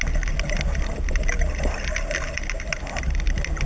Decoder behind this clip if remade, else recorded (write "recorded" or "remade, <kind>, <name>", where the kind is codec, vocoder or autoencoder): recorded